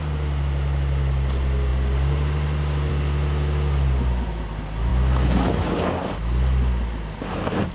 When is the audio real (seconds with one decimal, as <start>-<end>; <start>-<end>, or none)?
0.0-7.7